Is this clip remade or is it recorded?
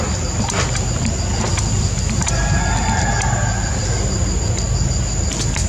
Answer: recorded